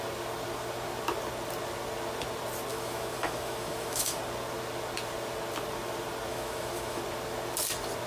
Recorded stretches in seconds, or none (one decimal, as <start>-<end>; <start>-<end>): 0.0-2.7; 4.2-6.3; 7.0-8.1